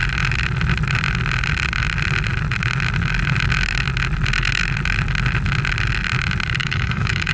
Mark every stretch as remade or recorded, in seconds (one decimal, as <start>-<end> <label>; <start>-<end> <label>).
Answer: 0.0-6.6 recorded; 6.6-7.3 remade